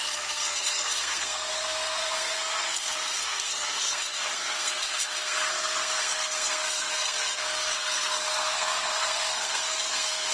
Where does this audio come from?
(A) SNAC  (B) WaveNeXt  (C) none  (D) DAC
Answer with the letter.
A